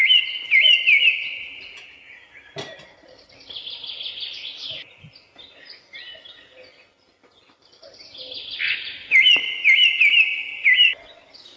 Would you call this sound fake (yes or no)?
no